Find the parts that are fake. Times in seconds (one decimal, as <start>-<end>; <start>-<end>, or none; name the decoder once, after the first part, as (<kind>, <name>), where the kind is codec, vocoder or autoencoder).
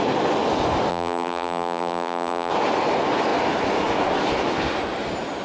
0.9-2.5 (vocoder, BigVGAN v2)